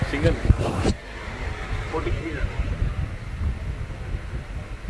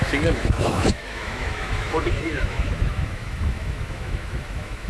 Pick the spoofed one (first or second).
second